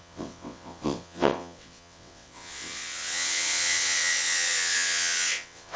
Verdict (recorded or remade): remade